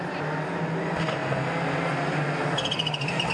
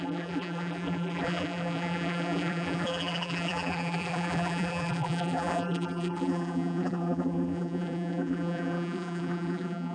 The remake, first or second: second